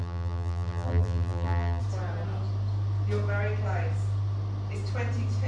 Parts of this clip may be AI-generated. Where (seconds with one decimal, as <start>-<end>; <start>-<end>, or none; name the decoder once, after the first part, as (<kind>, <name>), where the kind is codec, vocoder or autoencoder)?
0.0-1.8 (vocoder, BigVGAN v2)